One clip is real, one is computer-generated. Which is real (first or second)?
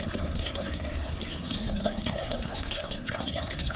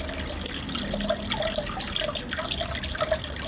second